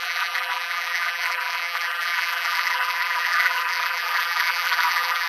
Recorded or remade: remade